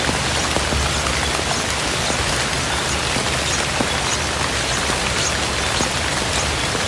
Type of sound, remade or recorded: recorded